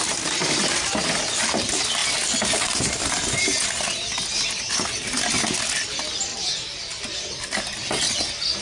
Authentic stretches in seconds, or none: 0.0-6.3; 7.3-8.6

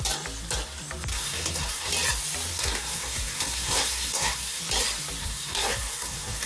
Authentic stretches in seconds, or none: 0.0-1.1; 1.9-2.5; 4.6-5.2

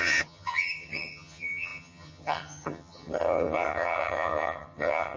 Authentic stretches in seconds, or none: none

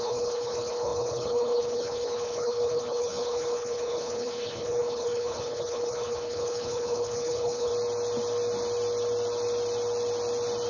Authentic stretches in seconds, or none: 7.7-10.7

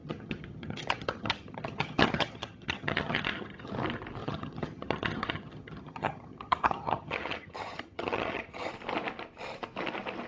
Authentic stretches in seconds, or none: 3.7-4.2; 8.7-10.3

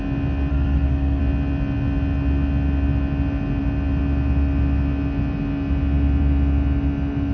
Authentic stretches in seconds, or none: 0.0-0.5; 1.2-7.3

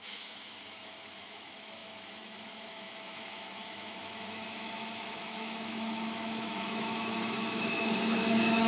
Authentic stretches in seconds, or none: none

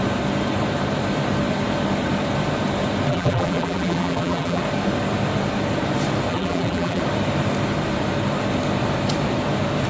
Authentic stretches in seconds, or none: 0.0-3.1; 4.6-6.3; 7.0-9.9